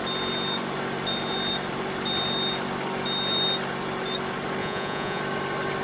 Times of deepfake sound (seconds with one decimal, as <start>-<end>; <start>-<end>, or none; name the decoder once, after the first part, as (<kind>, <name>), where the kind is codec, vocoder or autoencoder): 4.6-5.2 (vocoder, Vocos)